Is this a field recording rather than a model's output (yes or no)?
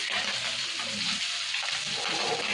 yes